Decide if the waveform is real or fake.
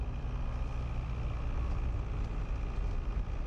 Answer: real